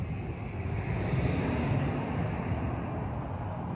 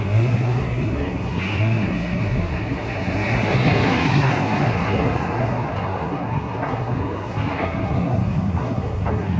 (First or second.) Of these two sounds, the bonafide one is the first